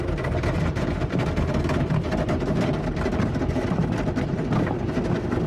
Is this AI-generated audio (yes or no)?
no